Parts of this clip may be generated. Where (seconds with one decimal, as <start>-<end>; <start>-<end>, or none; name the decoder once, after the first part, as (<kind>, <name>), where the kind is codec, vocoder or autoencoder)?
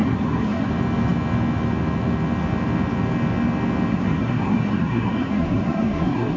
0.0-0.7 (codec, SNAC); 3.9-6.4